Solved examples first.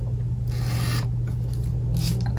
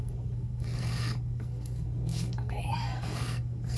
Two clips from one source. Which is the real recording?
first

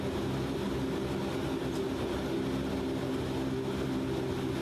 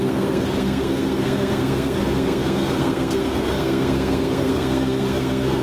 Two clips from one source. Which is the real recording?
first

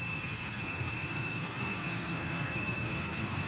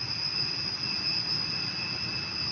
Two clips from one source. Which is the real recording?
second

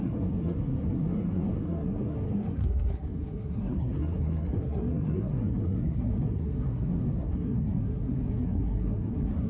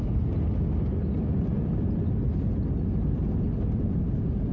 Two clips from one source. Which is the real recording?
second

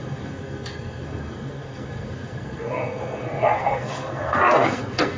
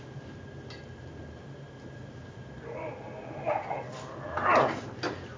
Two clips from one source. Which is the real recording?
second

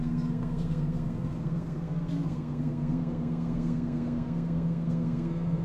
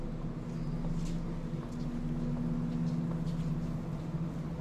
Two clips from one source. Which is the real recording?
second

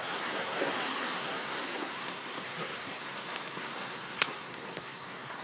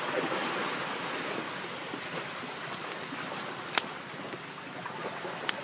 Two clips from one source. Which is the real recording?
second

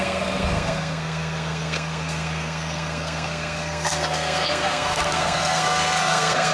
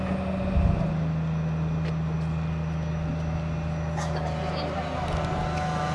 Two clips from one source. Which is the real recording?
second